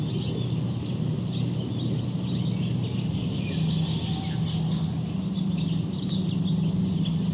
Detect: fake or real real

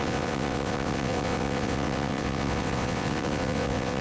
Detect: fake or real fake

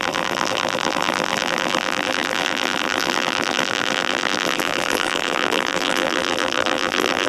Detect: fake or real fake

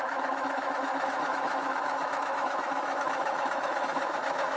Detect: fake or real fake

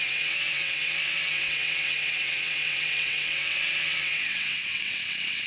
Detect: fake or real fake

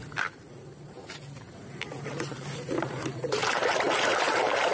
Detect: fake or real fake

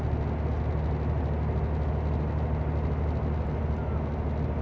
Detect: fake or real real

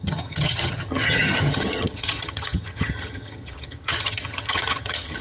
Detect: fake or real fake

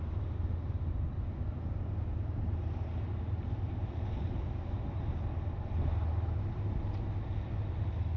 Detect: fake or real real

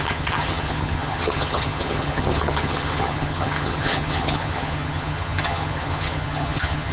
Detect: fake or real fake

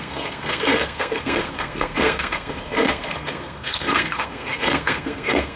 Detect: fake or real fake